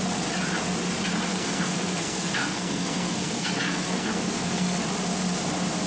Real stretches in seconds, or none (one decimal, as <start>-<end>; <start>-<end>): 0.0-1.3; 4.8-5.9